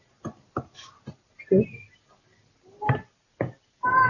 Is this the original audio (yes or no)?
yes